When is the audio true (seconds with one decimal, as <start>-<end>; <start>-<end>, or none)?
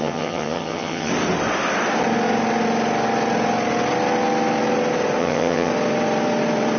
1.1-5.2; 5.7-6.8